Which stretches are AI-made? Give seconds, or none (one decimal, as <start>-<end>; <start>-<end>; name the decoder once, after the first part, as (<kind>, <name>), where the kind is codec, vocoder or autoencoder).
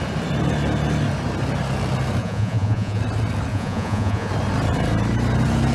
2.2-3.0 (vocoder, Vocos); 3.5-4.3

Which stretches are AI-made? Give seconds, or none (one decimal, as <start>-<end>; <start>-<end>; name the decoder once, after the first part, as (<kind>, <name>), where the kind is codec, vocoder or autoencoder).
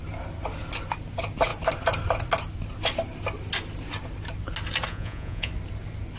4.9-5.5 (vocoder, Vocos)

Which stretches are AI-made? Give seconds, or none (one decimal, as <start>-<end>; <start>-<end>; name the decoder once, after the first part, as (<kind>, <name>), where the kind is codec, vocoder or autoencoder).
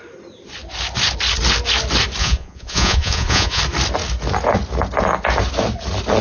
2.2-3.6 (vocoder, Vocos)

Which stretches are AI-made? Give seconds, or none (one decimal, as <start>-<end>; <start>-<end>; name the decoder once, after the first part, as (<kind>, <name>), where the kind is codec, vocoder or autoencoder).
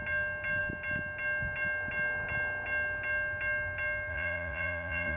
4.1-5.2 (vocoder, Vocos)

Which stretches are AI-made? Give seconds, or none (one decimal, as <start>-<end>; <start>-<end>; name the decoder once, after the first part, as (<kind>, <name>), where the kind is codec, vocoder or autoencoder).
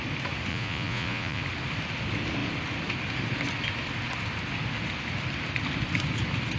0.5-1.4 (vocoder, Vocos)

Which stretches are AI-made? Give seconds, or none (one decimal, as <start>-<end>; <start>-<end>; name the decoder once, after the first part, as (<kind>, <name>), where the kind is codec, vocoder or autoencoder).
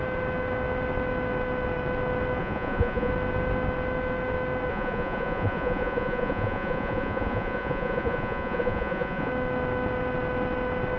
2.4-3.1 (vocoder, Vocos); 4.7-9.3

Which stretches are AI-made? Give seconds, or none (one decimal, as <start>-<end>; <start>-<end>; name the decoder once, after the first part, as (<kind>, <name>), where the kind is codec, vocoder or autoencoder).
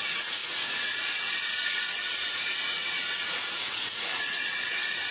0.0-5.1 (vocoder, Vocos)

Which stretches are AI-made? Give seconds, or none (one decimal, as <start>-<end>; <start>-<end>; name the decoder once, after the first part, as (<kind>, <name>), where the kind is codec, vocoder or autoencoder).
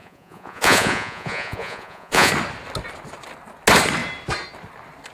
0.0-2.3 (vocoder, Vocos)